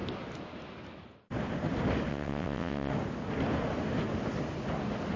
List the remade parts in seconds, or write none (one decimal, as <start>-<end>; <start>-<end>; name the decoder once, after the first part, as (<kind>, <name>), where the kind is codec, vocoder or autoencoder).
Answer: 2.1-2.9 (vocoder, WaveNeXt)